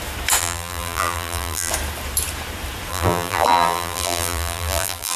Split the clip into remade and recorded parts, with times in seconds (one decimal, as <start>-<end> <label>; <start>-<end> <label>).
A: 0.0-0.4 recorded; 0.4-1.7 remade; 1.7-2.9 recorded; 2.9-5.2 remade